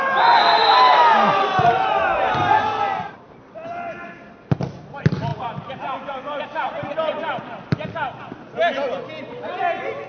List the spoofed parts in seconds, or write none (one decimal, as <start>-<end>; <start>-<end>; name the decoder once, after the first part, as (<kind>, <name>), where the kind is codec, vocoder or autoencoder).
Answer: none